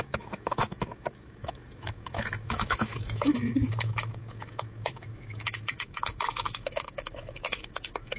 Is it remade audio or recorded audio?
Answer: remade